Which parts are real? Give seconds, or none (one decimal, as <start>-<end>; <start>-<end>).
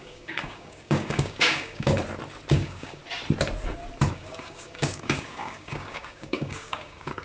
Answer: 2.0-2.5; 3.0-4.1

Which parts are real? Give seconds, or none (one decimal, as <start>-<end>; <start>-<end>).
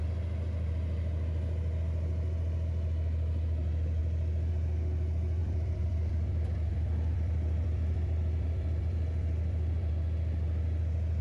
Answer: 0.0-5.4; 9.9-11.2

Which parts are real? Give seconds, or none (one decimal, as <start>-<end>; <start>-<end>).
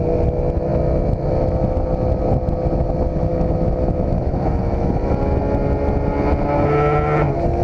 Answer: 0.0-3.3; 4.6-7.6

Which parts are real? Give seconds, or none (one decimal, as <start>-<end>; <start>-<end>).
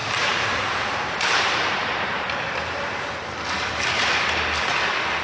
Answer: 3.1-5.2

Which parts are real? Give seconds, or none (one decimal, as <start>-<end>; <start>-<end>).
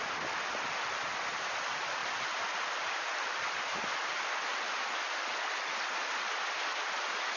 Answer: 0.0-7.4